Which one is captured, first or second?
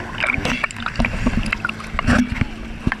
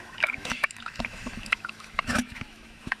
first